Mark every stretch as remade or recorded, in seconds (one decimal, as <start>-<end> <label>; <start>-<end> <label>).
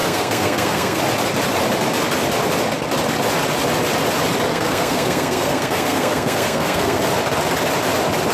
0.0-1.0 remade; 1.0-4.5 recorded; 4.5-7.0 remade; 7.0-8.3 recorded